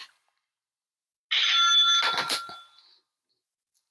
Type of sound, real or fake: real